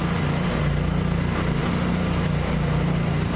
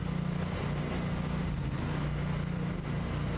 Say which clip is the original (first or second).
second